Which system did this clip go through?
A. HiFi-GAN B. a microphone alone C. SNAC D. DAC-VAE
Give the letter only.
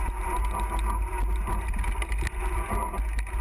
B